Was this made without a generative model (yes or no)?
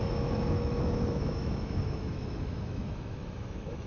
no